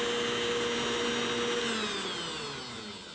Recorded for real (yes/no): yes